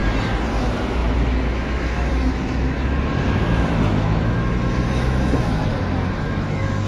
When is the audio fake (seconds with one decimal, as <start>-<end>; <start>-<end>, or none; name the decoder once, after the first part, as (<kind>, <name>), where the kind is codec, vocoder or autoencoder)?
0.6-6.9 (autoencoder, DAC-VAE)